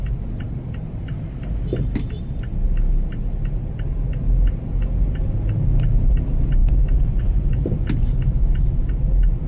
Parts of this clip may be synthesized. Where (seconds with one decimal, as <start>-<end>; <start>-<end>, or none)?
none